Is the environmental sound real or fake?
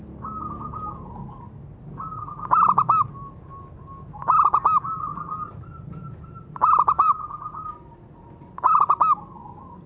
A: real